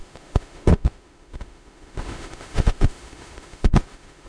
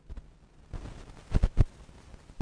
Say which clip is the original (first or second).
second